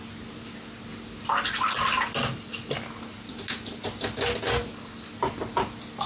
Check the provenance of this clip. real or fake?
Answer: real